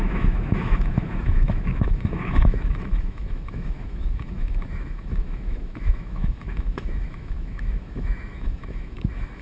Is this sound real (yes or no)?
no